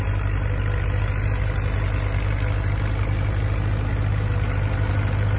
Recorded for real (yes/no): yes